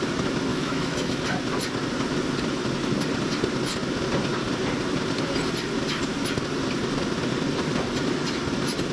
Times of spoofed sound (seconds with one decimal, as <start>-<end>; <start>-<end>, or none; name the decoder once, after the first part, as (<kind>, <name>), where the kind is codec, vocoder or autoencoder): 0.5-1.2 (autoencoder, DAC-VAE)